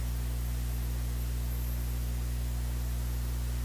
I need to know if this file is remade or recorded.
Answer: recorded